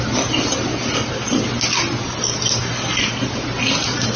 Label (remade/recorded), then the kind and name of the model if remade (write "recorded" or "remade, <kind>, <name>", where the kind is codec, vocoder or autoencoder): recorded